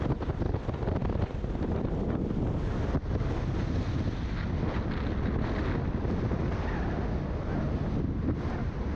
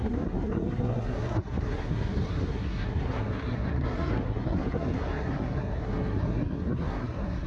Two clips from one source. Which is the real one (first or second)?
first